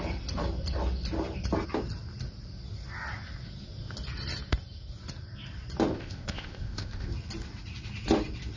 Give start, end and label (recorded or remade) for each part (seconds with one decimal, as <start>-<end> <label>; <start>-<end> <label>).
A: 0.0-5.9 recorded; 5.9-7.1 remade; 7.1-8.6 recorded